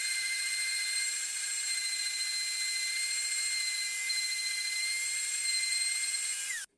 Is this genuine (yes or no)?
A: no